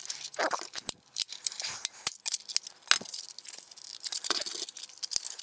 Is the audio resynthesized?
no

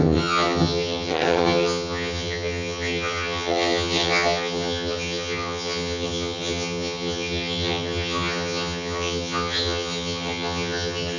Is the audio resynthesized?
yes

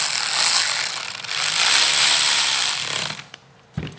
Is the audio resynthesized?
no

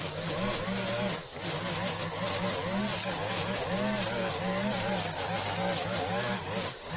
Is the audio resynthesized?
no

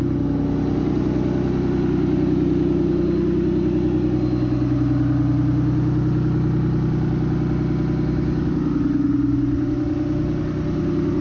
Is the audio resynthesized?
no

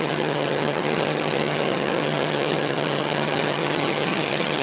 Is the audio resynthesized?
yes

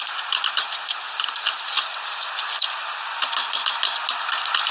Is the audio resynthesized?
no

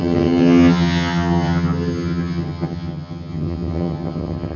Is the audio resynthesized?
yes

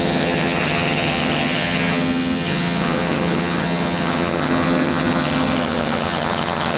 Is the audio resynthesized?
yes